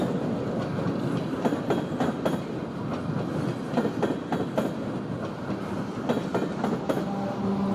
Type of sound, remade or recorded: recorded